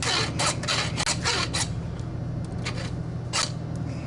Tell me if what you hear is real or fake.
real